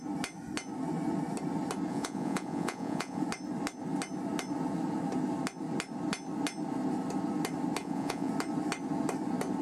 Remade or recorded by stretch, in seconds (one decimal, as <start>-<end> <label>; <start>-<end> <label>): 0.0-1.9 recorded; 1.9-3.2 remade; 3.2-7.8 recorded; 7.8-8.3 remade; 8.3-9.6 recorded